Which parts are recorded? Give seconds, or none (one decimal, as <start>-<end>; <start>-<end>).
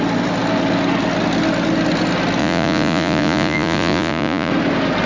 0.0-2.4; 4.5-5.1